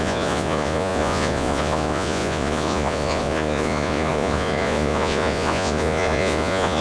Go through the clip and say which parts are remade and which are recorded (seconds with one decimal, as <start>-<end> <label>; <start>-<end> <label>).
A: 0.0-6.8 remade